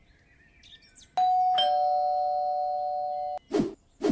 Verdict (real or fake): real